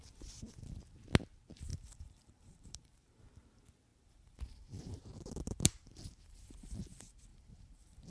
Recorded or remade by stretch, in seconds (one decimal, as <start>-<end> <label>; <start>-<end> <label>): 0.0-1.7 recorded; 1.7-3.2 remade; 3.2-3.9 recorded; 3.9-6.8 remade; 6.8-7.3 recorded; 7.3-8.1 remade